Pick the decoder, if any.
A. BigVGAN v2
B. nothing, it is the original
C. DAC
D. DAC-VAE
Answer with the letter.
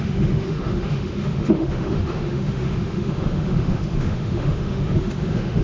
D